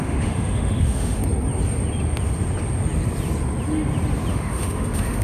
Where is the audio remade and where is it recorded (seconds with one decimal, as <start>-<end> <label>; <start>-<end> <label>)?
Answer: 0.0-1.2 remade; 1.2-4.3 recorded; 4.3-5.2 remade